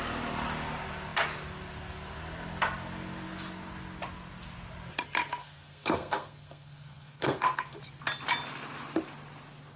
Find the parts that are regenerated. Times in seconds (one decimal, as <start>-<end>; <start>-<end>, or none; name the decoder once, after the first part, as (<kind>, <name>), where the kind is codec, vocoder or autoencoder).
5.4-7.8 (codec, SNAC)